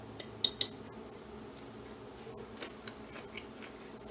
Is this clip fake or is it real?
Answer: real